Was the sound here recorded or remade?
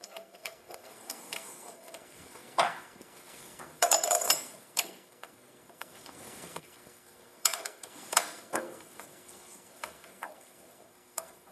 remade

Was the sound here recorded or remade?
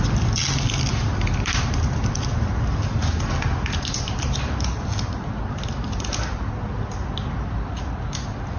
recorded